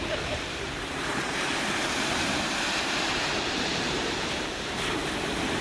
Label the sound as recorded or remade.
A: remade